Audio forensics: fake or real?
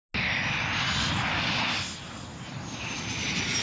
real